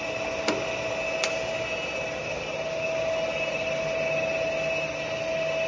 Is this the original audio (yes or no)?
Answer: yes